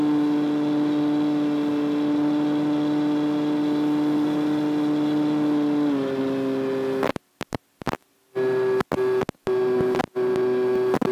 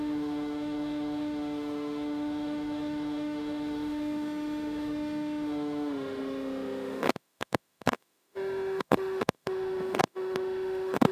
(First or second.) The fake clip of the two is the second